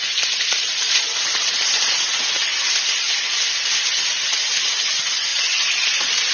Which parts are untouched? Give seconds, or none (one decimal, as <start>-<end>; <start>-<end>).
0.0-6.3